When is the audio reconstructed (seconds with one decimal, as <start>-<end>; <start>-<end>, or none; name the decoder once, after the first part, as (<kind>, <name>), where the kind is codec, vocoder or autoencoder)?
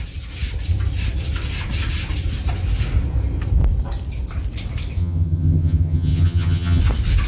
5.0-6.8 (vocoder, HiFi-GAN)